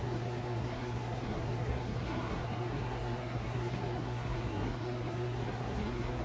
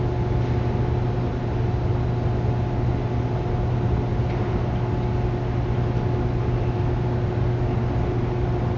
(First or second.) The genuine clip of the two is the second